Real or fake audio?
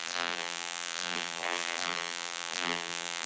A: fake